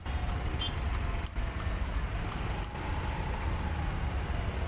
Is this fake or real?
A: real